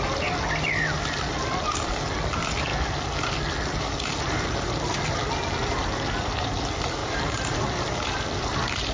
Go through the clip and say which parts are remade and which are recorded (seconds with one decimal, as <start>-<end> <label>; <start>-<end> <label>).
0.0-7.0 recorded; 7.0-7.6 remade; 7.6-8.9 recorded